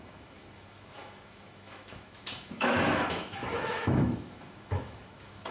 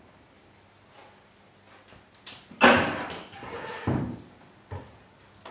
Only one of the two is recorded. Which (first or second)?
second